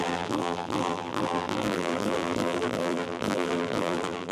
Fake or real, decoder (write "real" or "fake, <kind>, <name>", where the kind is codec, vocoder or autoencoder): fake, vocoder, BigVGAN v2